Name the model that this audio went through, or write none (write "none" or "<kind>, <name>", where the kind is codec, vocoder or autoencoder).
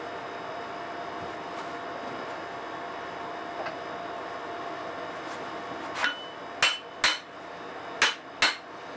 none